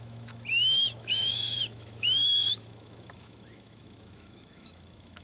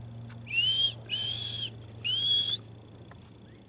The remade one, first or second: first